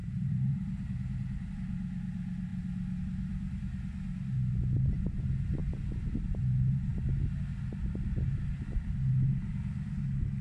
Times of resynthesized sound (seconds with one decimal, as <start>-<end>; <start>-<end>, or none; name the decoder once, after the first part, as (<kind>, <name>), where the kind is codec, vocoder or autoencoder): 0.0-1.5 (vocoder, BigVGAN v2)